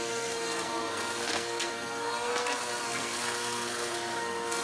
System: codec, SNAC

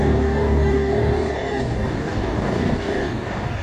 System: codec, DAC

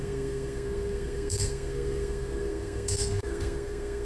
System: codec, SNAC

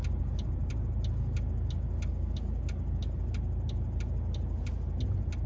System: none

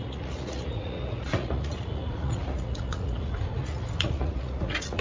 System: vocoder, Vocos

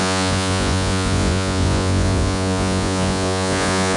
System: vocoder, Vocos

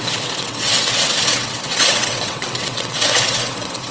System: vocoder, WaveNeXt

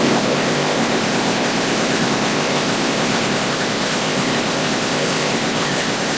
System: codec, ZipCodec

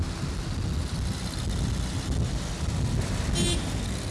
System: none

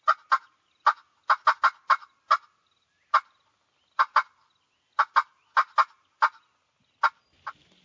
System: none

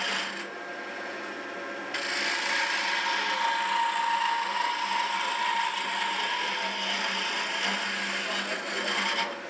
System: none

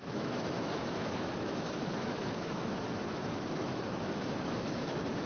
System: autoencoder, DAC-VAE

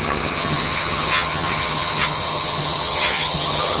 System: vocoder, HiFi-GAN